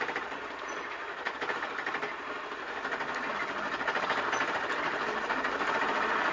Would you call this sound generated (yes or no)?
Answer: yes